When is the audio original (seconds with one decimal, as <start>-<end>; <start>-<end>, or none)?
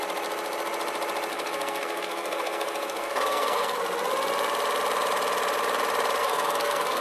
0.0-1.3; 3.8-6.2